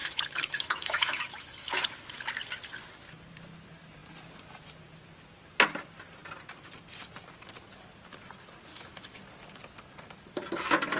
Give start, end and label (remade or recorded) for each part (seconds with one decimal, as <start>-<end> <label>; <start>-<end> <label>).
0.0-1.7 remade; 1.7-8.7 recorded; 8.7-9.2 remade; 9.2-11.0 recorded